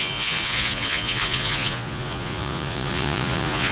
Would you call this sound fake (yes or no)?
yes